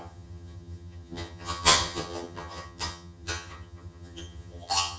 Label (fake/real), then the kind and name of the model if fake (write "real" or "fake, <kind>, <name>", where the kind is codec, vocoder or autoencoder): fake, vocoder, HiFi-GAN